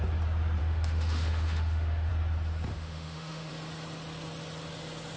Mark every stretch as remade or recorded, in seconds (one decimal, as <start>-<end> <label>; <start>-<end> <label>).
0.0-0.6 recorded; 0.6-2.1 remade; 2.1-2.7 recorded; 2.7-3.5 remade; 3.5-5.2 recorded